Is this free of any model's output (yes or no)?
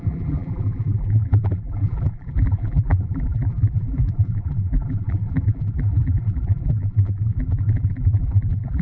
no